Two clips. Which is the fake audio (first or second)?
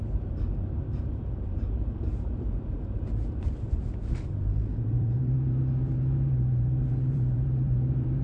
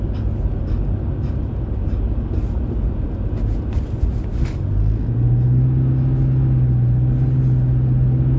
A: first